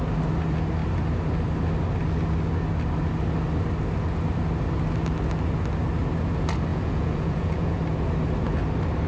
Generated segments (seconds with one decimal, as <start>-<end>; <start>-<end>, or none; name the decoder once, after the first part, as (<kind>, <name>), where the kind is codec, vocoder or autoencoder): 6.7-7.8 (vocoder, Vocos)